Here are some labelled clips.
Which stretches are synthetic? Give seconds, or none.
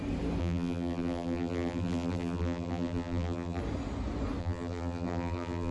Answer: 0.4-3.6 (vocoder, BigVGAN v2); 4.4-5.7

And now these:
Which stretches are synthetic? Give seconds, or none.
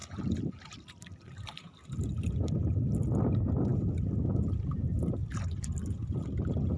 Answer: 0.7-5.2 (vocoder, BigVGAN v2)